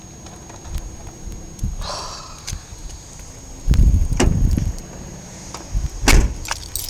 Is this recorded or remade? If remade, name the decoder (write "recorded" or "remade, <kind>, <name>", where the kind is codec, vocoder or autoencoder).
recorded